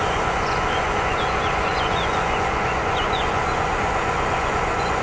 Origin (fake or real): fake